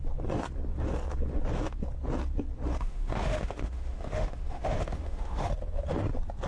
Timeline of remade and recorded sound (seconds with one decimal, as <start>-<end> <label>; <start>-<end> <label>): 0.0-2.7 recorded; 2.7-5.5 remade; 5.5-6.5 recorded